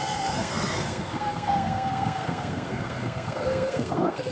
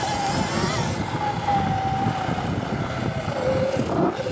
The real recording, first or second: second